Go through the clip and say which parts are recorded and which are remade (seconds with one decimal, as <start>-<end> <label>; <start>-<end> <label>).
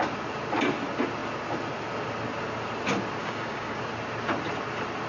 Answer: 0.0-3.2 recorded; 3.2-3.8 remade; 3.8-5.1 recorded